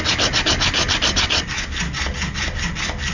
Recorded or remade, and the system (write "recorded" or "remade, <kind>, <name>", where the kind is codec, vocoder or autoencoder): recorded